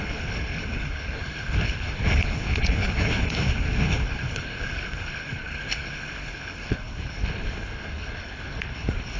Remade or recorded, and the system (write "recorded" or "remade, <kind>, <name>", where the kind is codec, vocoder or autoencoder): remade, codec, HILCodec